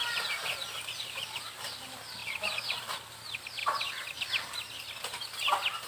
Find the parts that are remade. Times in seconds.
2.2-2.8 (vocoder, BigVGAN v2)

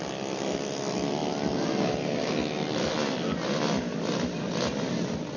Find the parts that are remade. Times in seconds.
none

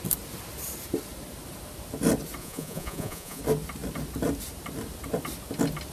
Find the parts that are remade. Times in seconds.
2.4-3.4 (vocoder, Vocos)

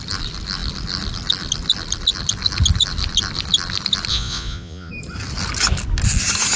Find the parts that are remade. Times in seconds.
4.1-4.9 (vocoder, Vocos)

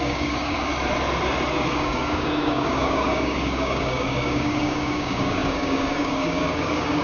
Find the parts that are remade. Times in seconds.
0.0-0.7 (codec, DAC); 1.7-7.0

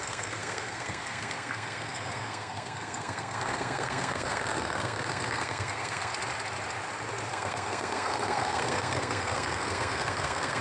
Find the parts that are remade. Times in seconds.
0.0-6.1 (codec, SNAC); 7.3-10.6

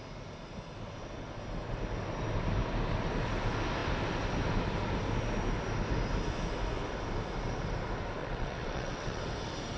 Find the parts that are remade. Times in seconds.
8.2-9.2 (vocoder, WaveNeXt)